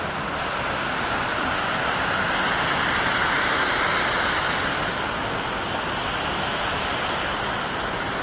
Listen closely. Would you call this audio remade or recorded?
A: recorded